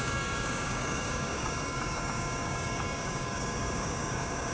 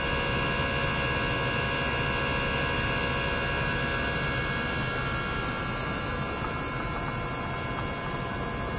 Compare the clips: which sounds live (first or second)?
second